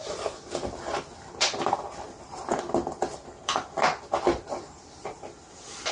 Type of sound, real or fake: real